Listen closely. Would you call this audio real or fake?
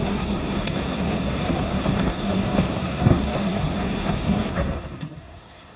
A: fake